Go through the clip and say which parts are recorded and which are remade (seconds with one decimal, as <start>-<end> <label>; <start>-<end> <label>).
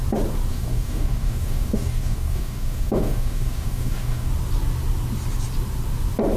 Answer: 0.0-0.5 recorded; 0.5-4.3 remade; 4.3-6.4 recorded